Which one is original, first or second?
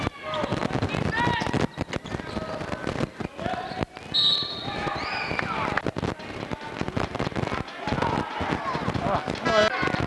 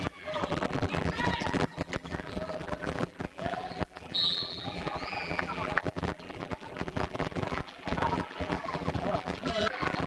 first